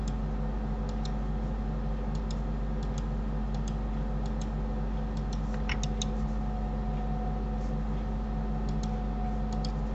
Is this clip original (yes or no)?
yes